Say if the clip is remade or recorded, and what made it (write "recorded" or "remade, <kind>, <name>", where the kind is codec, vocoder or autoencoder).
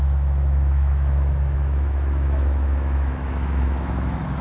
remade, autoencoder, DAC-VAE